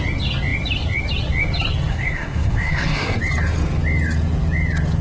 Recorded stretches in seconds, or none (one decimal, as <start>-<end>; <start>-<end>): 0.0-1.9; 3.2-5.0

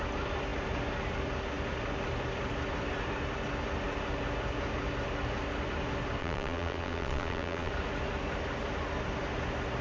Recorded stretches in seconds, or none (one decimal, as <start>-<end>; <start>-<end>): 0.0-6.2; 7.7-9.8